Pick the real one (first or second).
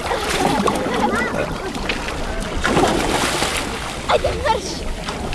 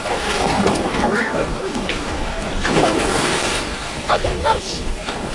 first